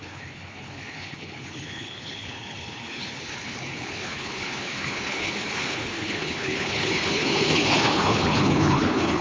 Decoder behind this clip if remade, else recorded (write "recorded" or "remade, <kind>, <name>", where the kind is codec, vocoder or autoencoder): remade, codec, HILCodec